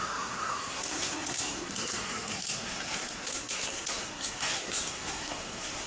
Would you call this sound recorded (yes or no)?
no